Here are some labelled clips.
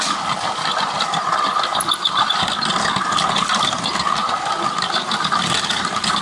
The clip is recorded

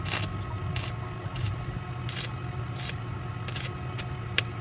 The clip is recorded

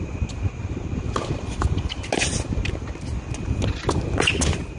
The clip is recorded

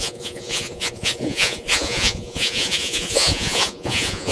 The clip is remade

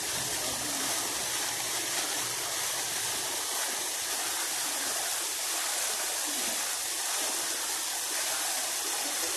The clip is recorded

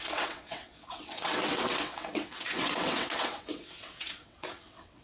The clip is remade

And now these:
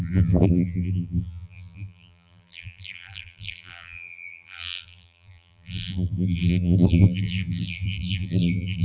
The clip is remade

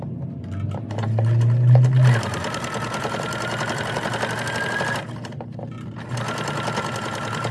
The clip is recorded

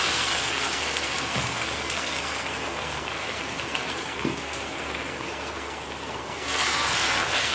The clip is remade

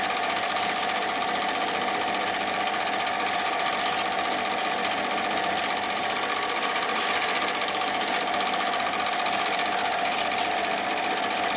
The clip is recorded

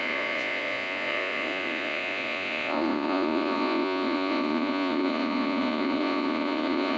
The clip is remade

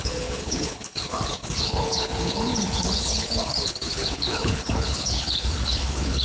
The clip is remade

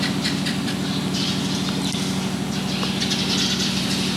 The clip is remade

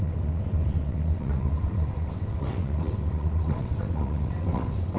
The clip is remade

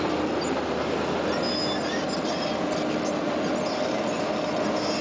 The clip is recorded